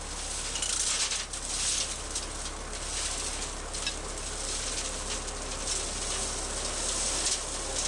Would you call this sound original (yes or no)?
yes